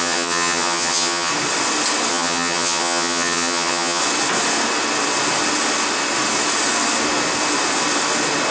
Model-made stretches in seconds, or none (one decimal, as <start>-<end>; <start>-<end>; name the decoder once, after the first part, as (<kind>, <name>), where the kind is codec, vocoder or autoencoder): 0.0-1.3 (vocoder, HiFi-GAN); 2.1-4.0